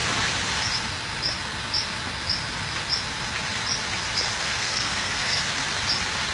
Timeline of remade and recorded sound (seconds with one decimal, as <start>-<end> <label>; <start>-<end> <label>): 0.0-4.4 recorded; 4.4-5.4 remade; 5.4-6.3 recorded